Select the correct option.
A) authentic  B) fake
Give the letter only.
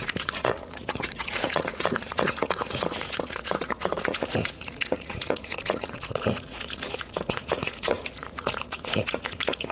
B